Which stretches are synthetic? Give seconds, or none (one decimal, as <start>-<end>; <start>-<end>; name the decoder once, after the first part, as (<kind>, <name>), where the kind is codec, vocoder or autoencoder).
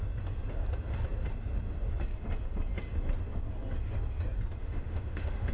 4.6-5.5 (autoencoder, DAC-VAE)